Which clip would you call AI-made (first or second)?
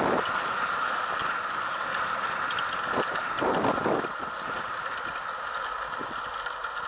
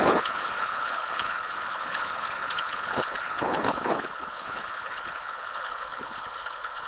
second